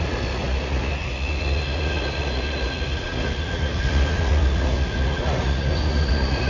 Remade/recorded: remade